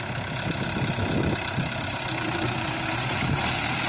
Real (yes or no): yes